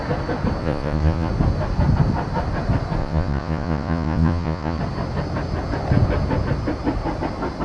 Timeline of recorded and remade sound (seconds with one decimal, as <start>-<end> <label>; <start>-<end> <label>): 0.0-0.6 recorded; 0.6-1.3 remade; 1.3-3.0 recorded; 3.0-4.8 remade; 4.8-7.6 recorded